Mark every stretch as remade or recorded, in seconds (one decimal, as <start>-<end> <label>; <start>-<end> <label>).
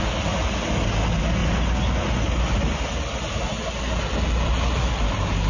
0.0-5.5 recorded